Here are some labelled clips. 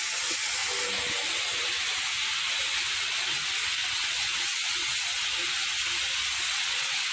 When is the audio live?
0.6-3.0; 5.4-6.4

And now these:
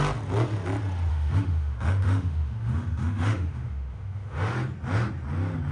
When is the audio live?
0.0-1.1; 4.5-5.7

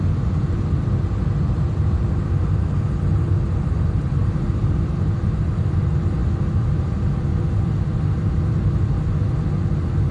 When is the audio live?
0.0-4.2; 4.8-10.1

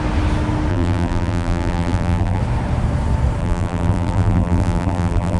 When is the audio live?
0.0-0.7; 2.4-3.4